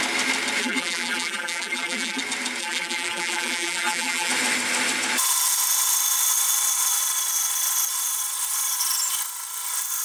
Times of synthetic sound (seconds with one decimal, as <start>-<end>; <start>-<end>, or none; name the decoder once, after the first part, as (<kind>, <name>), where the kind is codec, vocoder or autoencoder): 0.6-2.2 (vocoder, BigVGAN v2); 2.6-4.3